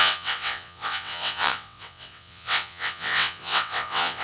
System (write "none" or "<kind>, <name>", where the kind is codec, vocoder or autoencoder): vocoder, WaveNeXt